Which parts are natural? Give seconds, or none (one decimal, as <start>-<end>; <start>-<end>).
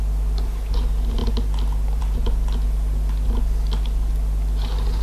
0.0-5.0